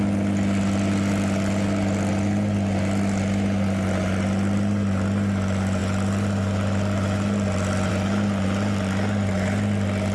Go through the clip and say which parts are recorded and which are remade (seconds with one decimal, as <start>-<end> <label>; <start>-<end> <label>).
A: 0.0-10.1 recorded